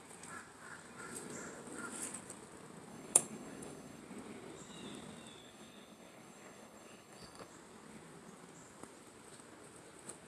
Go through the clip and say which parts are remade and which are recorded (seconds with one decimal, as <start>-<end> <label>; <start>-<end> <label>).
0.0-2.9 recorded; 2.9-4.0 remade; 4.0-5.4 recorded; 5.4-7.5 remade; 7.5-10.3 recorded